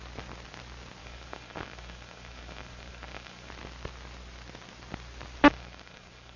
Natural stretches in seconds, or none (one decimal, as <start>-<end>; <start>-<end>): 0.0-1.0; 3.5-5.5